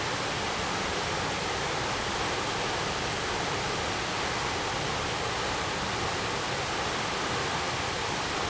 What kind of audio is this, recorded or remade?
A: recorded